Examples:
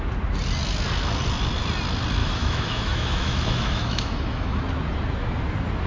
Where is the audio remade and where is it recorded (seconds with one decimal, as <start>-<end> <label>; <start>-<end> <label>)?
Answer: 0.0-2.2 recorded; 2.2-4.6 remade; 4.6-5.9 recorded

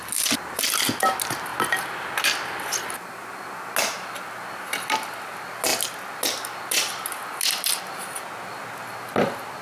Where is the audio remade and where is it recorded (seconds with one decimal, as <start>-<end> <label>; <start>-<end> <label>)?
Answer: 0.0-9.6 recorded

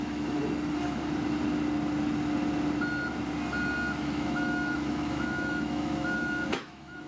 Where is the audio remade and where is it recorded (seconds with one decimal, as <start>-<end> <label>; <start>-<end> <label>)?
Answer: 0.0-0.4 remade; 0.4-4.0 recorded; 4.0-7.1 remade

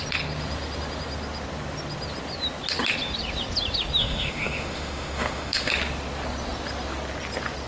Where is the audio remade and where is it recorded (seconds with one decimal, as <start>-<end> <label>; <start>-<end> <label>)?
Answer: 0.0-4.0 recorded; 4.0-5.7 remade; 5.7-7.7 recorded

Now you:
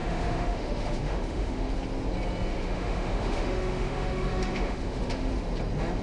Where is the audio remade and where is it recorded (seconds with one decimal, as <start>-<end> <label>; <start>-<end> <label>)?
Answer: 0.0-1.7 remade; 1.7-2.5 recorded; 2.5-5.3 remade; 5.3-6.0 recorded

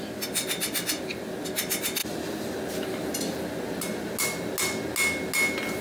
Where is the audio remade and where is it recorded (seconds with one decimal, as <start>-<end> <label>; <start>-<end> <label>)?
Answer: 0.0-5.8 recorded

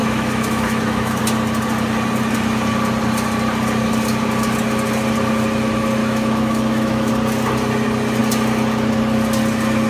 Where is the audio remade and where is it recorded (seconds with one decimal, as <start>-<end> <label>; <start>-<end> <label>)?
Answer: 0.0-1.2 remade; 1.2-6.0 recorded; 6.0-7.1 remade; 7.1-9.9 recorded

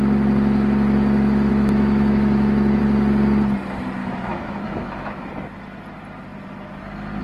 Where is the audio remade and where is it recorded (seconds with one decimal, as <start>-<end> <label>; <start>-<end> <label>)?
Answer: 0.0-1.5 recorded; 1.5-2.8 remade; 2.8-4.0 recorded; 4.0-5.3 remade; 5.3-7.2 recorded